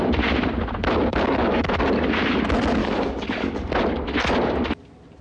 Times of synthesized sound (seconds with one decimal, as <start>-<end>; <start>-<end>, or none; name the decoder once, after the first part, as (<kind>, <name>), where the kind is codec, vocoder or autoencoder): 1.1-1.7 (codec, DAC); 2.8-3.7